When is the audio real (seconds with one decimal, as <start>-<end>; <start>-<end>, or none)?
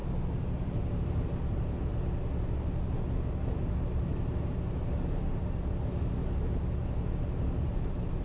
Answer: 2.1-8.2